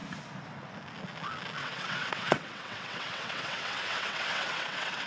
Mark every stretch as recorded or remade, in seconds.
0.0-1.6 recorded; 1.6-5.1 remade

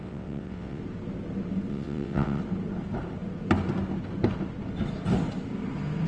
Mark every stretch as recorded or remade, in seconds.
0.0-0.8 remade; 0.8-1.7 recorded; 1.7-2.4 remade; 2.4-6.1 recorded

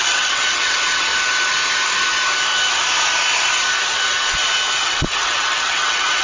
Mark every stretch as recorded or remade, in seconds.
0.0-1.1 remade; 1.1-4.8 recorded; 4.8-6.2 remade

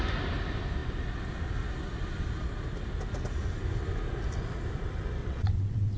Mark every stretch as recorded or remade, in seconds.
0.0-5.2 recorded; 5.2-6.0 remade

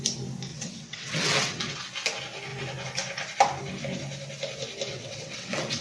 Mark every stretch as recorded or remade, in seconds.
0.0-0.5 recorded; 0.5-1.8 remade; 1.8-4.9 recorded; 4.9-5.8 remade

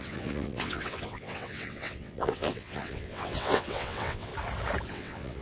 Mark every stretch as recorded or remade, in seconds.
0.0-4.3 remade; 4.3-4.9 recorded; 4.9-5.4 remade

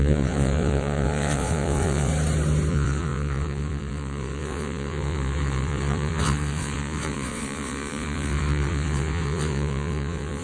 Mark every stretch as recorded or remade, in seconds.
0.0-2.1 remade; 2.1-2.7 recorded; 2.7-10.4 remade

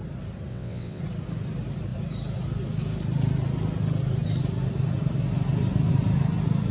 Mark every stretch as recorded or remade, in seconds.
0.0-0.5 recorded; 0.5-1.0 remade; 1.0-6.7 recorded